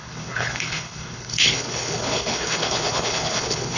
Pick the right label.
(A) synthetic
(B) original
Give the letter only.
A